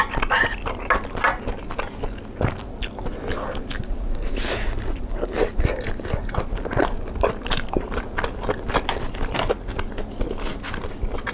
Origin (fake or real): real